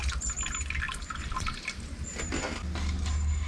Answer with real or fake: real